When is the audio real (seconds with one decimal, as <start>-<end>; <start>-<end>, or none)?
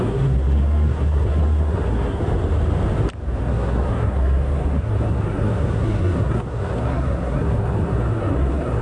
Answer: 2.2-3.4